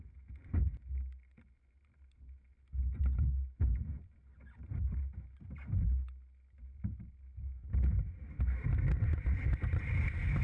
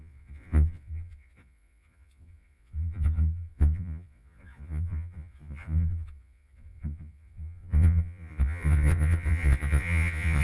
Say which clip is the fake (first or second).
second